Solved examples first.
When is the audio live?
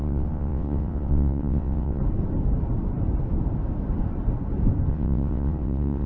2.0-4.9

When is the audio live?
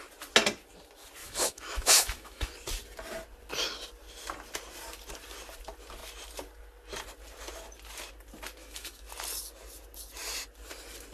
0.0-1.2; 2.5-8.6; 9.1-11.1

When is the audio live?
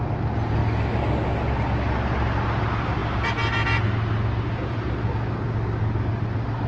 0.0-6.7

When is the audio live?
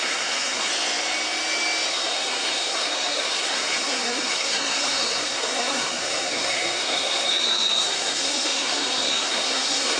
0.7-1.9